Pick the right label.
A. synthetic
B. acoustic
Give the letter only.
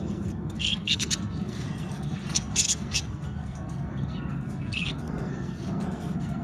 A